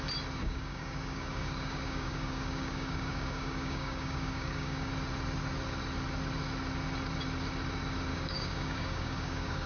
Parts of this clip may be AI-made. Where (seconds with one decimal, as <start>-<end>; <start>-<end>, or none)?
0.4-4.9; 8.1-9.7